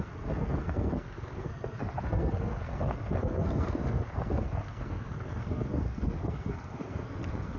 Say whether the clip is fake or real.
fake